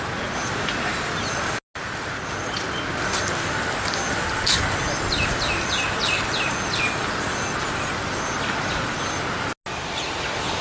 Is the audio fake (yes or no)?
no